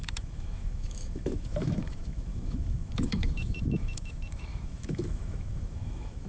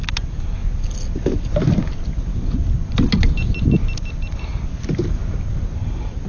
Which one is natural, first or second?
second